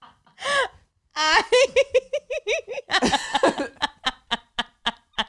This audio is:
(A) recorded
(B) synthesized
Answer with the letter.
B